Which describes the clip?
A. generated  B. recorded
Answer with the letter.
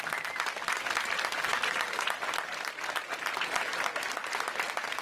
B